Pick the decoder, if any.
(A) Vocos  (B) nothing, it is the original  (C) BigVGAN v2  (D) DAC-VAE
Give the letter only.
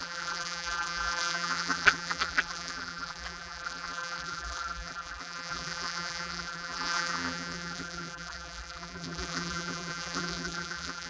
C